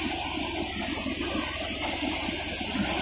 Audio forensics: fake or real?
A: real